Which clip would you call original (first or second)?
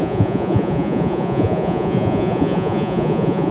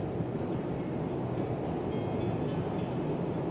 second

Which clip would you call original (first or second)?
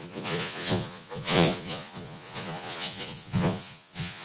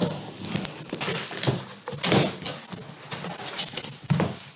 second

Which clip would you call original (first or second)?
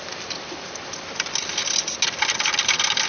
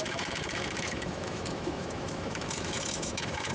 first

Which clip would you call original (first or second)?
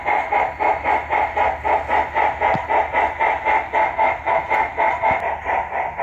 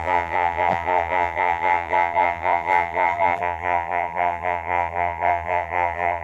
first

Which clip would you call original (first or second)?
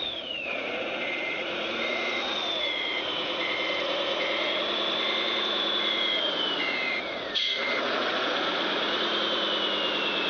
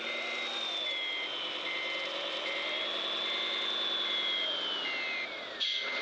second